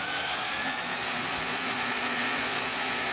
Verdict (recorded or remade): remade